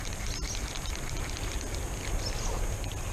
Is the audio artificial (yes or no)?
no